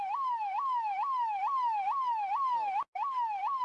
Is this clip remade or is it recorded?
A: recorded